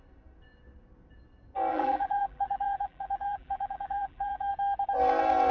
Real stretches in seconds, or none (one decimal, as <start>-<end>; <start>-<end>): 0.0-1.7; 4.5-5.5